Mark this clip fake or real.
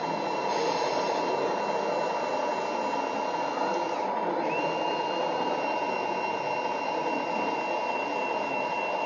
real